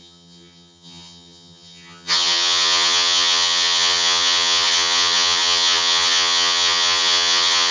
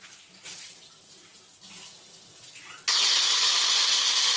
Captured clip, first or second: second